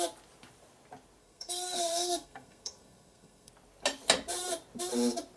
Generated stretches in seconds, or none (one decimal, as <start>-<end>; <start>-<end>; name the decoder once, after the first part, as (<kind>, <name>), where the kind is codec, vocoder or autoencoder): 1.2-3.5 (codec, SNAC)